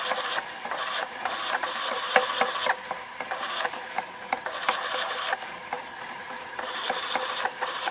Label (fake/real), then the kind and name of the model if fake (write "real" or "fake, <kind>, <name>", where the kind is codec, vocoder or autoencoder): fake, vocoder, BigVGAN v2